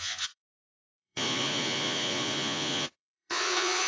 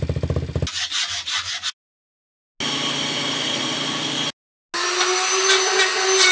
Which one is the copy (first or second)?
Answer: first